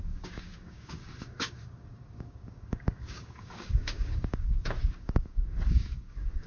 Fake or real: fake